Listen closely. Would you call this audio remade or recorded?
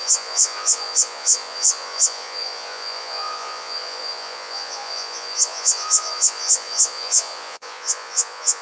remade